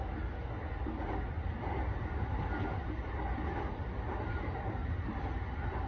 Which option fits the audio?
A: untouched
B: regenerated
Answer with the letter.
A